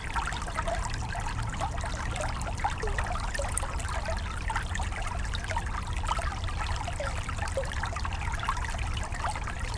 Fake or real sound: real